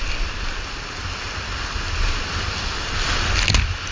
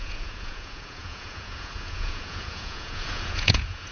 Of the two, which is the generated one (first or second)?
second